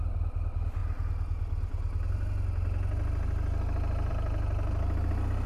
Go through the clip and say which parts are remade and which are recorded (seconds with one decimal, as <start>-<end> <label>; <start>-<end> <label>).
0.0-5.5 recorded